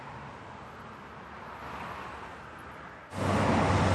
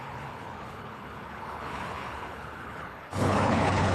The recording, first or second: first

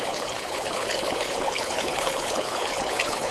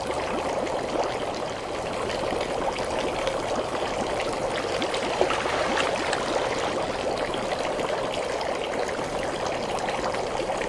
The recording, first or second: second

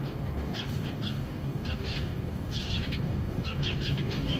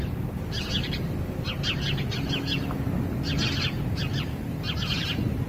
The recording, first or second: second